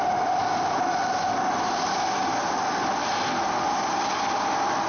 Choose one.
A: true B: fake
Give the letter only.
A